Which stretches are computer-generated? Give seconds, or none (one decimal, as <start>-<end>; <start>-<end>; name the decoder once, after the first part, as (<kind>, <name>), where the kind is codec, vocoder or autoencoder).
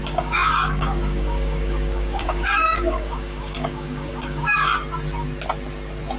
0.0-4.7 (codec, DAC)